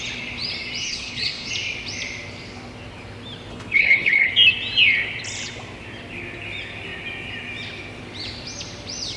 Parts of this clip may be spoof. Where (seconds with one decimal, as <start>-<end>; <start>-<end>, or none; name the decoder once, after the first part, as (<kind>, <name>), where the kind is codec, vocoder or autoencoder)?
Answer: 0.8-1.5 (codec, HILCodec); 3.5-4.3